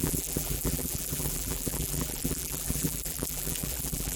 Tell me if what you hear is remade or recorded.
remade